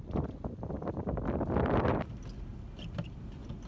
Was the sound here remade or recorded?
recorded